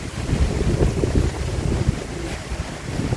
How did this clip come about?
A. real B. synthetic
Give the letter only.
A